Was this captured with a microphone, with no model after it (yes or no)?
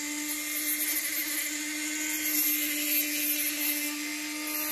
yes